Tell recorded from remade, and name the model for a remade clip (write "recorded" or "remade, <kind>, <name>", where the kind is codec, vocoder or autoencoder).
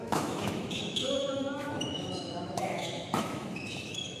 remade, autoencoder, DAC-VAE